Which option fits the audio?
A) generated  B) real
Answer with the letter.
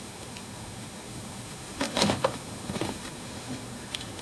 A